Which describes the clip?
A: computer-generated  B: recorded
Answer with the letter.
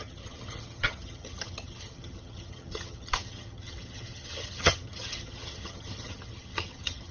A